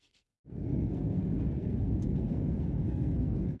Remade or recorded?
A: remade